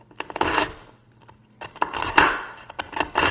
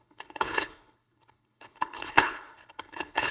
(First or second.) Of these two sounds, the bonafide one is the first